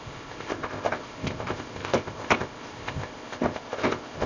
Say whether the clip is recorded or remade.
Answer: remade